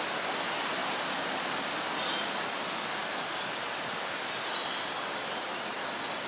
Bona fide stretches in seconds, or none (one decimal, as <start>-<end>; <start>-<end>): 0.0-6.3